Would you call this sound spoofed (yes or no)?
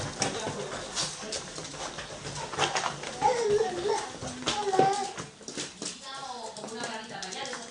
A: no